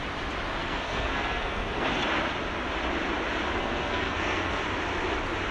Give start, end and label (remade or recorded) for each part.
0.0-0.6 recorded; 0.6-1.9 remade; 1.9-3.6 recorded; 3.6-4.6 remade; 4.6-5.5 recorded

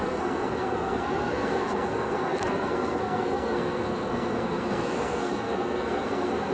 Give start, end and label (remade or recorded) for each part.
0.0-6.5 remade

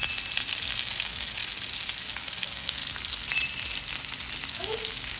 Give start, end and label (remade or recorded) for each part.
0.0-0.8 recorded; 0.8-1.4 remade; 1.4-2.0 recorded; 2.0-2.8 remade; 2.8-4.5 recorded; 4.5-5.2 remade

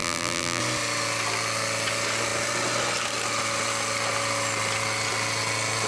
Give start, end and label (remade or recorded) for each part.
0.0-0.6 remade; 0.6-5.9 recorded

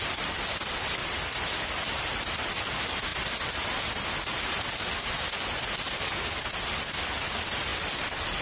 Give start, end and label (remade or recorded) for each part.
0.0-1.0 recorded; 1.0-2.3 remade; 2.3-7.7 recorded; 7.7-8.4 remade